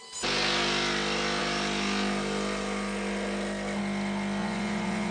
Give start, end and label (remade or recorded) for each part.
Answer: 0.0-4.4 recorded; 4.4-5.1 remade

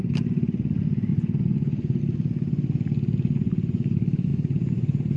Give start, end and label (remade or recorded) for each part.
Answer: 0.0-1.1 recorded; 1.1-2.0 remade; 2.0-4.3 recorded; 4.3-5.2 remade

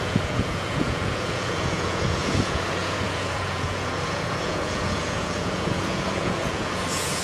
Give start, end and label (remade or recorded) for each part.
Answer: 0.0-7.2 remade

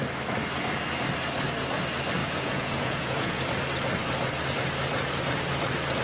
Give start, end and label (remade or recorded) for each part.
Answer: 0.0-2.2 recorded; 2.2-3.4 remade; 3.4-6.0 recorded

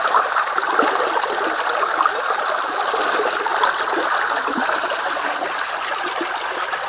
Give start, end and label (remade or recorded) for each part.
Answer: 0.0-6.9 recorded

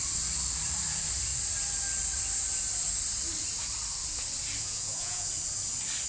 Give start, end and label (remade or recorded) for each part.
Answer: 0.0-4.6 recorded; 4.6-5.3 remade; 5.3-6.1 recorded

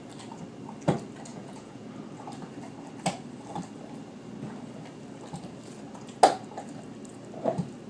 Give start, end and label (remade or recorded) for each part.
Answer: 0.0-1.3 recorded; 1.3-1.9 remade; 1.9-7.9 recorded